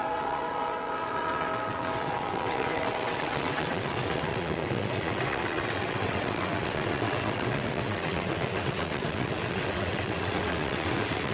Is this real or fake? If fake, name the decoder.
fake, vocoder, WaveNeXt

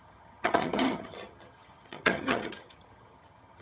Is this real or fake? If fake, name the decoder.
fake, vocoder, HiFi-GAN